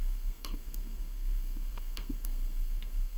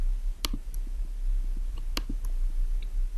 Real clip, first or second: second